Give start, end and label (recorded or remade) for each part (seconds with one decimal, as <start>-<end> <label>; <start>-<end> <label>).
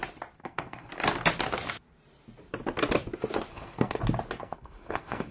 0.0-0.4 recorded; 0.4-0.9 remade; 0.9-3.5 recorded; 3.5-4.0 remade; 4.0-4.4 recorded; 4.4-5.3 remade